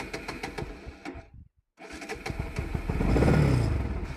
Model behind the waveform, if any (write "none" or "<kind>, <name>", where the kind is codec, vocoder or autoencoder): none